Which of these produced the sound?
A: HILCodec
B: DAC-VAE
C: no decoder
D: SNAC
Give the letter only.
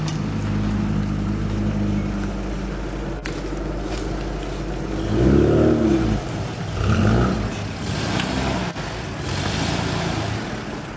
C